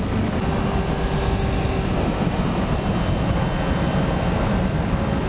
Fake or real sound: real